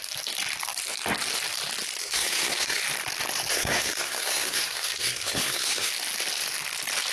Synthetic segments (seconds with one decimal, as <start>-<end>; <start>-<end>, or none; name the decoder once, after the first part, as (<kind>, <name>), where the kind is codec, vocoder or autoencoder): 2.0-2.8 (codec, SNAC); 3.5-5.9